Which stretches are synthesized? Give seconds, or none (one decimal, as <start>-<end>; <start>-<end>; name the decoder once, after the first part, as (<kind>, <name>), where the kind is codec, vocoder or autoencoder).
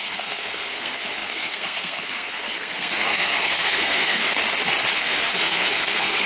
0.0-4.4 (codec, SNAC); 4.9-6.3